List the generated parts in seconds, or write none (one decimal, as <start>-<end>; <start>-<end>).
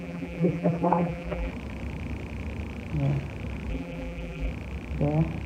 0.0-1.5; 3.7-4.5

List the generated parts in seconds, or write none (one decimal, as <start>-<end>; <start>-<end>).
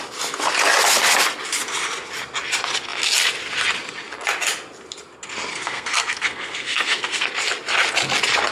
5.5-7.3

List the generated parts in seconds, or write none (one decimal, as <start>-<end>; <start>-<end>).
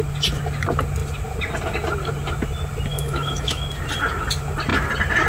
2.9-3.6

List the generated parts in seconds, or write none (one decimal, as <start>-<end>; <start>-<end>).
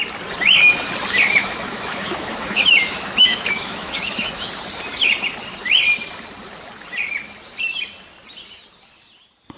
1.4-4.5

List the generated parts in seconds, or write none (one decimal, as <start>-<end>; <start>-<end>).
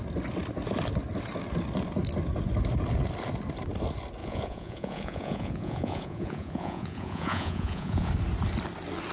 4.2-8.1